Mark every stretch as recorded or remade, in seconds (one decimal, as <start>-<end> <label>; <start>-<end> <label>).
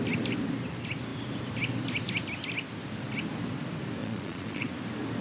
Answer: 0.0-4.0 recorded; 4.0-4.7 remade; 4.7-5.2 recorded